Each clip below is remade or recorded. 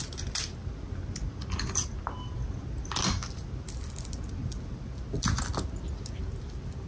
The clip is recorded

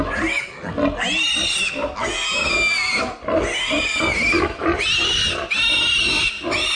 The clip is recorded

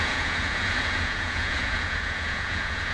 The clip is remade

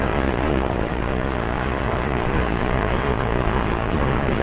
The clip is remade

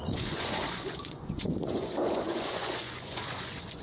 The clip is remade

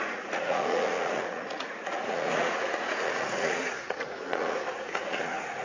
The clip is remade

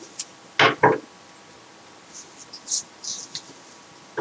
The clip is recorded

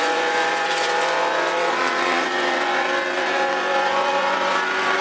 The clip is remade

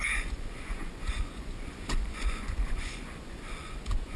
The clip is remade